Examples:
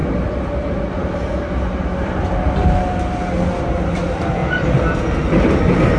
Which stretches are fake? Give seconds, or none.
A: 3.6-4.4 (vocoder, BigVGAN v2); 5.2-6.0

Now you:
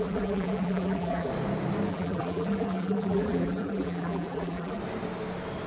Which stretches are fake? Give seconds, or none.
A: 0.0-1.3 (vocoder, BigVGAN v2); 1.9-4.8